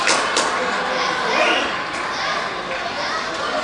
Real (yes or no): yes